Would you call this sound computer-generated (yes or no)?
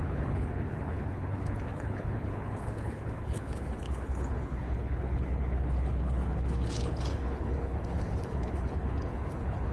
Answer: yes